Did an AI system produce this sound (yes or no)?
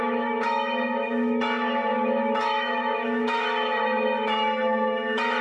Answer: yes